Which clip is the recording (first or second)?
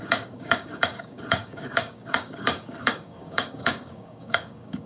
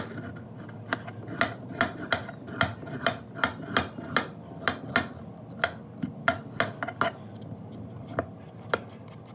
second